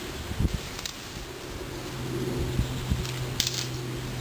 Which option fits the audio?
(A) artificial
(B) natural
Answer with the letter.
B